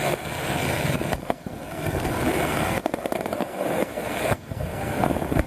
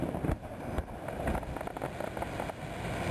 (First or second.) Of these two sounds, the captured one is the second